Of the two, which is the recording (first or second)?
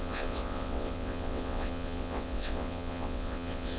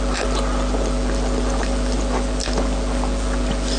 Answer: second